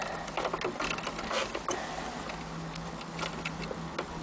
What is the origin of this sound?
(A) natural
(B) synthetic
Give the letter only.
A